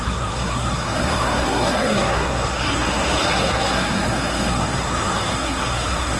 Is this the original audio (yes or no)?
no